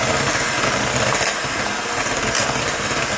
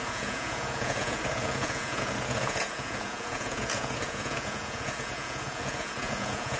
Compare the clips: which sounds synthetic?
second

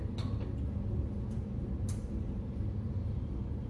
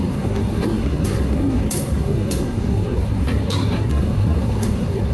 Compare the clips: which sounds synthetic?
second